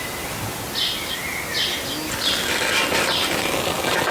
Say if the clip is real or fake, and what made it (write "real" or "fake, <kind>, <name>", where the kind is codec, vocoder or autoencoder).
real